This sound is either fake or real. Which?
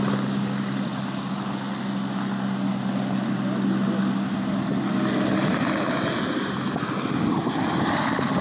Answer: real